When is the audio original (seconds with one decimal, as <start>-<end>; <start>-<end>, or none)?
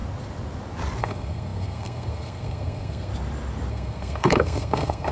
0.0-1.0; 3.1-3.7